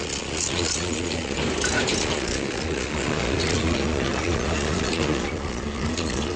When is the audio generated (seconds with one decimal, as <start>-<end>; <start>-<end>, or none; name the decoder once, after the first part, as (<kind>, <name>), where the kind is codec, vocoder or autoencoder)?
0.0-1.4 (vocoder, Vocos); 2.0-6.4